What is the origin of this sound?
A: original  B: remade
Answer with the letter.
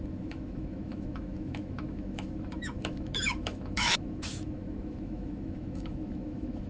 B